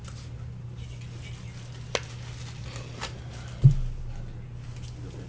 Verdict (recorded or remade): recorded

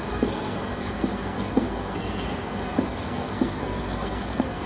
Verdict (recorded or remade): remade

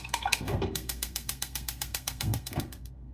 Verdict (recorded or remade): remade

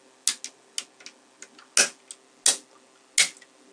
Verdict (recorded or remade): recorded